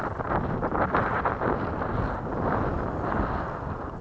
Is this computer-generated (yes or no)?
no